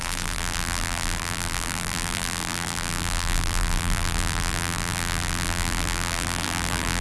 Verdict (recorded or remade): remade